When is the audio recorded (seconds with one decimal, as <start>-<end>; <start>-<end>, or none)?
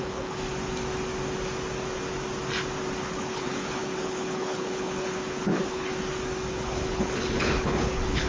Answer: 0.4-3.0; 5.9-6.5